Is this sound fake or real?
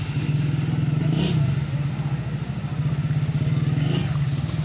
real